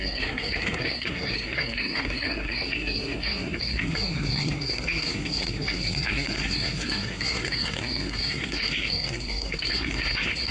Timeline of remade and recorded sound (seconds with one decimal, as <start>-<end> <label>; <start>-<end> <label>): 0.0-10.5 remade